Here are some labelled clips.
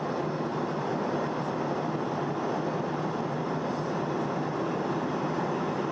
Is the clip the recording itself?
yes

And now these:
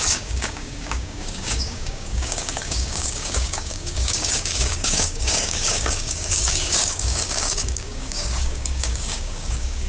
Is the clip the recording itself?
no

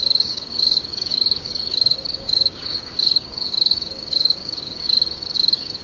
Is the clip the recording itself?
no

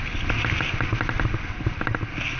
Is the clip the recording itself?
yes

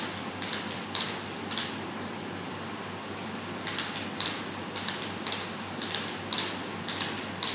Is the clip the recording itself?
yes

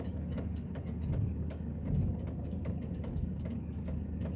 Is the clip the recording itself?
no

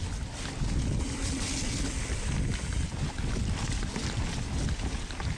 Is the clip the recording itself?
yes